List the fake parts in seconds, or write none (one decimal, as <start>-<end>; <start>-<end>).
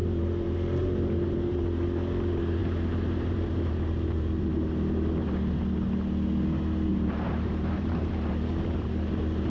0.0-1.6; 2.6-4.5; 6.9-8.1